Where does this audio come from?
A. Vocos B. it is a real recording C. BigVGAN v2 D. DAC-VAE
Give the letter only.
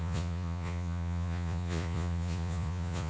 A